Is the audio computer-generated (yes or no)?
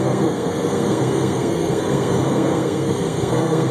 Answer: yes